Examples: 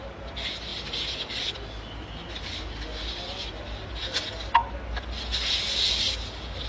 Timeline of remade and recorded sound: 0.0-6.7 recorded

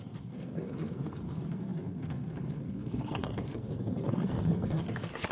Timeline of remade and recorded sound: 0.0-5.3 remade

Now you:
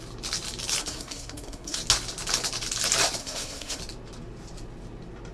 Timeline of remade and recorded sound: 0.0-0.8 recorded; 0.8-1.8 remade; 1.8-3.2 recorded; 3.2-3.8 remade; 3.8-5.3 recorded